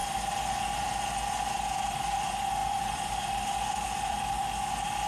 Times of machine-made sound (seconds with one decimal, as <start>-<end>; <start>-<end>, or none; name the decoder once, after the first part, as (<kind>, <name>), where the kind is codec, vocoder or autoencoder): 2.6-4.4 (vocoder, BigVGAN v2)